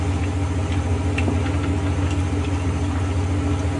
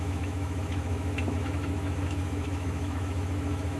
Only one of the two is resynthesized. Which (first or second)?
second